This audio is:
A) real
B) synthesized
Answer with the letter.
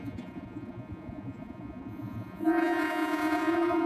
B